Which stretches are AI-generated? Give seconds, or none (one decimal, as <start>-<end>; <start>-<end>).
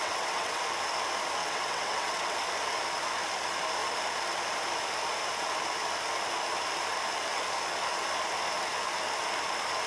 0.0-0.6; 1.4-2.4